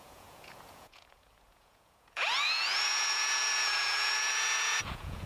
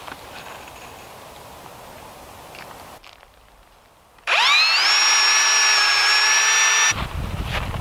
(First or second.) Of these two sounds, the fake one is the first